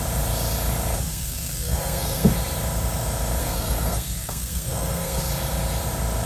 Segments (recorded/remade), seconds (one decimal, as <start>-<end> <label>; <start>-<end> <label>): 0.0-1.1 recorded; 1.1-2.3 remade; 2.3-3.4 recorded; 3.4-5.2 remade; 5.2-6.3 recorded